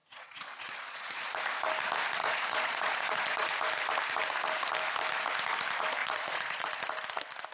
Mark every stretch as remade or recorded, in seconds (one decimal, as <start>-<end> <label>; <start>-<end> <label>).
0.0-1.4 remade; 1.4-2.2 recorded; 2.2-3.5 remade; 3.5-6.0 recorded; 6.0-6.8 remade; 6.8-7.5 recorded